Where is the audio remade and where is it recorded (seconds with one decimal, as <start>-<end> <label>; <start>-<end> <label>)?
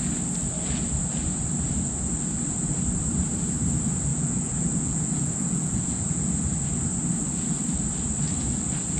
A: 0.0-4.1 recorded; 4.1-6.3 remade; 6.3-9.0 recorded